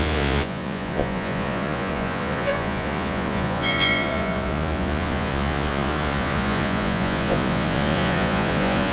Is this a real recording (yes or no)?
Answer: no